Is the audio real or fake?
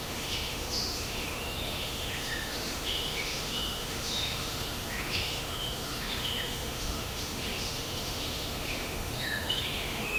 fake